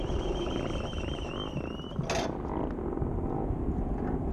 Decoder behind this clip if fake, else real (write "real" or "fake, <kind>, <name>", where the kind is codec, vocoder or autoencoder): real